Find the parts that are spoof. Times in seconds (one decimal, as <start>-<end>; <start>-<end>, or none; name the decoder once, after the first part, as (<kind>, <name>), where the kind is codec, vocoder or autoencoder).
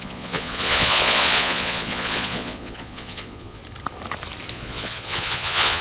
0.0-3.6 (vocoder, Vocos); 4.5-5.8